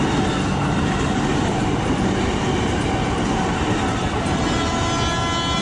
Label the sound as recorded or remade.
recorded